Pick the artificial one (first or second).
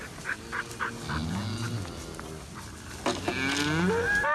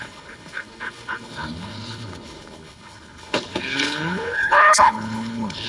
second